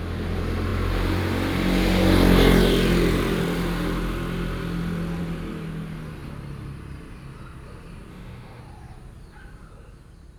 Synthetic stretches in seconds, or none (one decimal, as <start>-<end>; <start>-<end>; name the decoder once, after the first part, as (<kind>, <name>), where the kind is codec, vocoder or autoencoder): 8.1-8.6 (autoencoder, DAC-VAE)